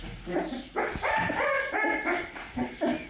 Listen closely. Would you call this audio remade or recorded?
recorded